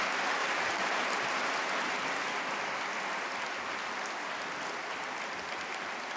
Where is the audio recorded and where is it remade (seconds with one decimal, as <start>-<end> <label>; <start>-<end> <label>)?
0.0-0.4 recorded; 0.4-1.4 remade; 1.4-6.2 recorded